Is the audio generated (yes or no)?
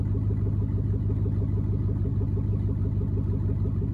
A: no